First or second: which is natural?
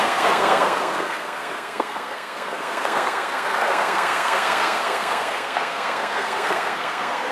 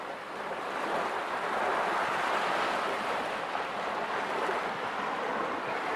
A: second